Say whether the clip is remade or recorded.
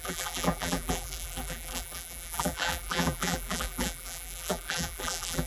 remade